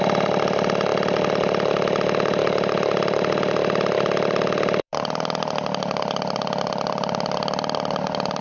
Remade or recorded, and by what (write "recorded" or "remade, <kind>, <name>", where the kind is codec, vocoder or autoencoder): remade, vocoder, BigVGAN v2